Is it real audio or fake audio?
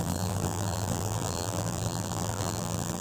fake